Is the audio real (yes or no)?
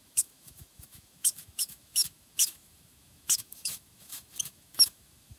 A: no